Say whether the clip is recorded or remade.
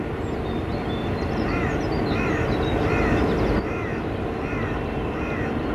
remade